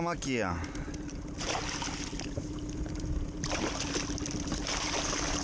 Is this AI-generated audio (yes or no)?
no